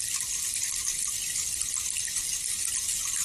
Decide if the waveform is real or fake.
real